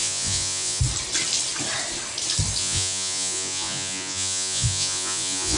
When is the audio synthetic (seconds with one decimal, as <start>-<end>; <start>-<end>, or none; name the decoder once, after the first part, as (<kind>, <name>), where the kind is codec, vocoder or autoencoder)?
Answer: 0.0-0.8 (vocoder, Vocos); 2.6-5.6